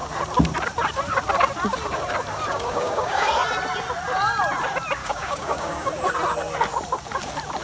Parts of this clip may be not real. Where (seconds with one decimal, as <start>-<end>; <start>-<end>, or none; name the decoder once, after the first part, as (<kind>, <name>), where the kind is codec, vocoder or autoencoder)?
2.5-3.3 (codec, DAC); 5.0-5.9